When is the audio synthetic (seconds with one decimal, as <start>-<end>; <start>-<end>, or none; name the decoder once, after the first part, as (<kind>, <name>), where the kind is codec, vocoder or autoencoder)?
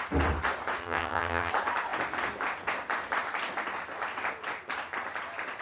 0.8-1.5 (vocoder, HiFi-GAN)